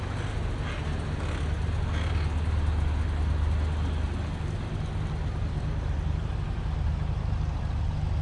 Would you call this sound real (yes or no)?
yes